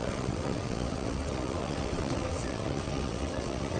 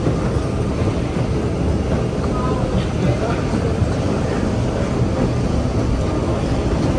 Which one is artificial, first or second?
first